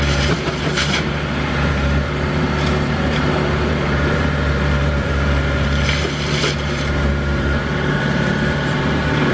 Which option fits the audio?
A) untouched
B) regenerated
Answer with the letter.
B